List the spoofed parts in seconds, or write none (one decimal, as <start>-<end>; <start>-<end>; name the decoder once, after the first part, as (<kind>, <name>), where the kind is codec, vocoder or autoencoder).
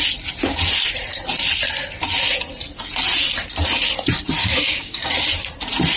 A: 4.4-5.1 (codec, DAC)